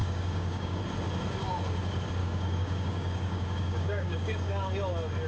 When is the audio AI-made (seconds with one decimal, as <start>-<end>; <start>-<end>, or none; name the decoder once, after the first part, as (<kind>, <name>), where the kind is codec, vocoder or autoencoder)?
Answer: 0.0-0.8 (codec, DAC); 2.2-4.7